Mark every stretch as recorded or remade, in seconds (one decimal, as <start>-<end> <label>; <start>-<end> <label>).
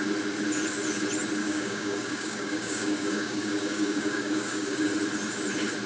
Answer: 0.0-1.4 recorded; 1.4-4.9 remade; 4.9-5.9 recorded